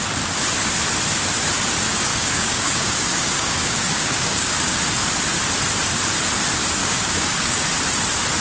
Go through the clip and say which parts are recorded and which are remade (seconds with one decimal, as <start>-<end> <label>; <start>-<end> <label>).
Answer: 0.0-2.1 recorded; 2.1-4.8 remade; 4.8-6.8 recorded; 6.8-7.6 remade; 7.6-8.4 recorded

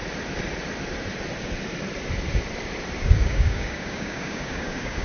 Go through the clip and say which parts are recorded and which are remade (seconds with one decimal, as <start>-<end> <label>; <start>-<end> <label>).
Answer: 0.0-3.0 recorded; 3.0-5.0 remade

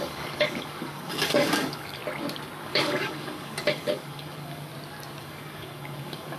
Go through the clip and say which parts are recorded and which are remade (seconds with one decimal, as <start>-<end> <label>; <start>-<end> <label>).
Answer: 0.0-2.0 remade; 2.0-2.6 recorded; 2.6-4.7 remade; 4.7-5.2 recorded; 5.2-6.4 remade

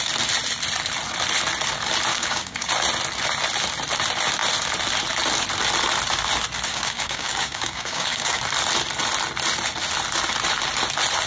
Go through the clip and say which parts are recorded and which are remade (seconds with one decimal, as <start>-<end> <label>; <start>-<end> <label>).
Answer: 0.0-2.1 recorded; 2.1-2.7 remade; 2.7-6.7 recorded; 6.7-8.4 remade; 8.4-11.3 recorded

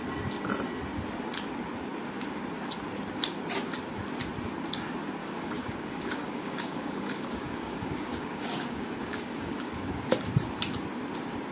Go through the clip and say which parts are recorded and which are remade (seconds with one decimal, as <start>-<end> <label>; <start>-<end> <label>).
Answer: 0.0-5.2 recorded; 5.2-9.9 remade; 9.9-11.5 recorded

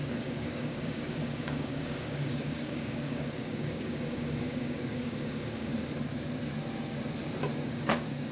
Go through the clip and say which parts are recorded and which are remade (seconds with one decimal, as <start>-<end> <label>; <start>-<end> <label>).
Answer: 0.0-5.7 remade; 5.7-7.7 recorded; 7.7-8.3 remade